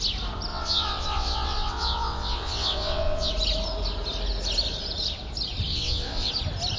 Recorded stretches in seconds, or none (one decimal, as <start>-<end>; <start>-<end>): 0.0-0.5; 3.3-5.7; 6.3-6.8